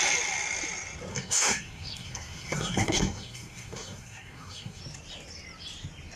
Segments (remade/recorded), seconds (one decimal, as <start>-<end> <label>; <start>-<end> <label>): 0.0-1.1 recorded; 1.1-4.8 remade; 4.8-6.2 recorded